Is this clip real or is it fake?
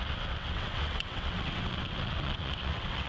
fake